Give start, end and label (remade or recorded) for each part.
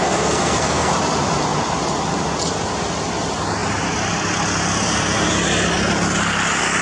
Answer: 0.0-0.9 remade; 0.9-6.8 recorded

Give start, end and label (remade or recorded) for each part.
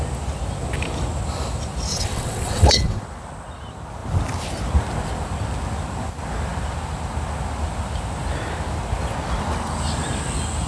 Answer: 0.0-1.9 recorded; 1.9-3.0 remade; 3.0-10.7 recorded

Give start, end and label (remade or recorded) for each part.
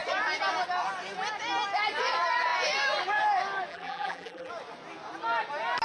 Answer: 0.0-3.7 recorded; 3.7-4.5 remade; 4.5-5.8 recorded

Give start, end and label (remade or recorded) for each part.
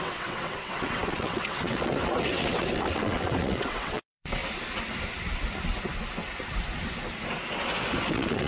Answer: 0.0-4.4 remade; 4.4-8.1 recorded; 8.1-8.5 remade